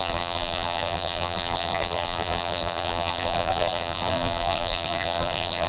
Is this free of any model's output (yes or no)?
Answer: no